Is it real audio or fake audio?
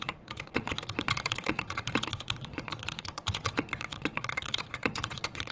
fake